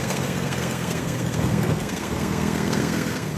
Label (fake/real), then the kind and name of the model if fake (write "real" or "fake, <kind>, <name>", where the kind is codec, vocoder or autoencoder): fake, codec, SNAC